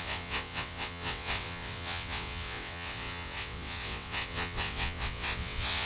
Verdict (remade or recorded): remade